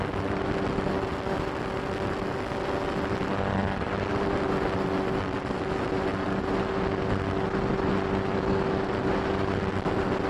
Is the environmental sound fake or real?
real